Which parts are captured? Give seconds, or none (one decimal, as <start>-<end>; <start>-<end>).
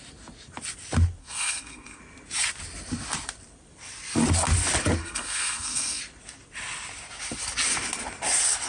0.0-1.2; 2.0-5.0; 6.0-8.7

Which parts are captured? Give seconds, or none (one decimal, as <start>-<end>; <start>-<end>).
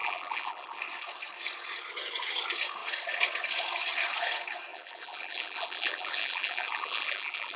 0.8-4.7